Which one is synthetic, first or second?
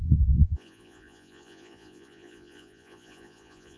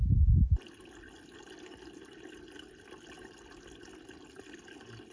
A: first